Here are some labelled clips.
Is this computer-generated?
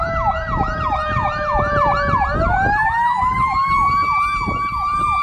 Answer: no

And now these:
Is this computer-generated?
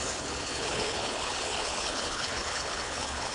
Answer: yes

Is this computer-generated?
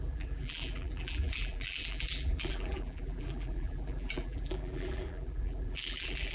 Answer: yes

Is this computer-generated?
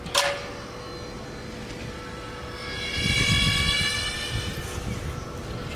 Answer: no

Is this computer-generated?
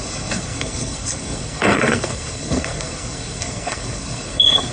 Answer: yes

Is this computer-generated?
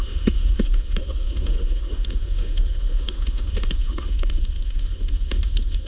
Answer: yes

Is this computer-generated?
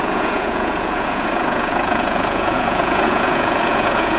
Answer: yes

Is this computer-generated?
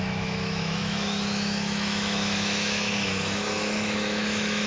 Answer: yes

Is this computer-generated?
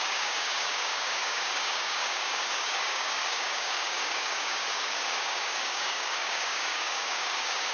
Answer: yes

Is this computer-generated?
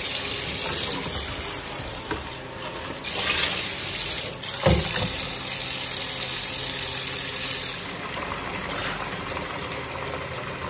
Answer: no